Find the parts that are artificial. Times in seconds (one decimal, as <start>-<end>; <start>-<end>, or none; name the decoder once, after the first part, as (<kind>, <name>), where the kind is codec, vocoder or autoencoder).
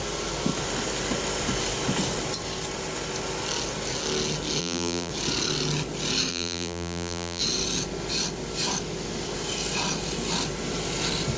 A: 4.6-5.1 (vocoder, BigVGAN v2); 6.3-7.4